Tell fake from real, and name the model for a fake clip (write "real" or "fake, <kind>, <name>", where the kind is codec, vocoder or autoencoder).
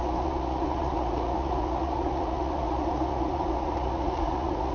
fake, vocoder, Vocos